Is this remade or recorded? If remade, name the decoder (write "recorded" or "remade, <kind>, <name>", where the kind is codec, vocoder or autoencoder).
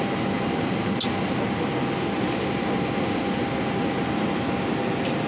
recorded